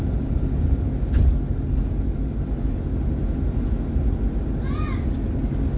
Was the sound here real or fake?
real